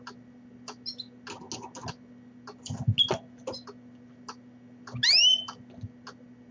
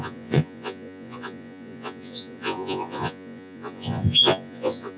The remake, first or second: second